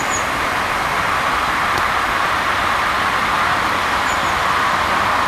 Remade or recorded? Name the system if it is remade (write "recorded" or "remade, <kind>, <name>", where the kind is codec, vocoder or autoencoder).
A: remade, vocoder, BigVGAN v2